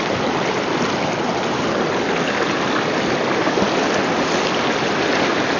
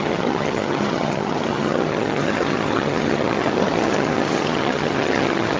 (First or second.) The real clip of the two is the first